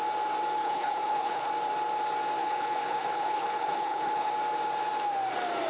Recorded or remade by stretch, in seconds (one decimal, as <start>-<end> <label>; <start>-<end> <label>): 0.0-0.6 recorded; 0.6-1.5 remade; 1.5-2.4 recorded; 2.4-4.3 remade; 4.3-5.7 recorded